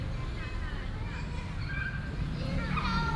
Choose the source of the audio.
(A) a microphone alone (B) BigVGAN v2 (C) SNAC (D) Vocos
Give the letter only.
A